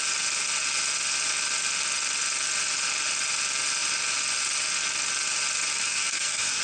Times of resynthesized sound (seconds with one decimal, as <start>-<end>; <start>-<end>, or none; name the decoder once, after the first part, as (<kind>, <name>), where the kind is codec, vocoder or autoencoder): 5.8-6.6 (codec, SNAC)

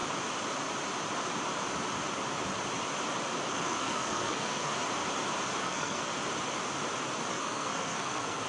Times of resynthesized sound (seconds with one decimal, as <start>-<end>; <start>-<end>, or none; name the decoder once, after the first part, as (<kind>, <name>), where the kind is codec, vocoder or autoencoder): 3.5-4.7 (codec, SNAC); 5.6-6.1; 7.3-8.5

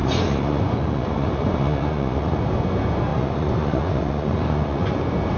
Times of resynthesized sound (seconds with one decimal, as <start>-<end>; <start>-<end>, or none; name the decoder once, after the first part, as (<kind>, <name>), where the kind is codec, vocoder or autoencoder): 0.0-2.4 (vocoder, Vocos); 3.1-5.0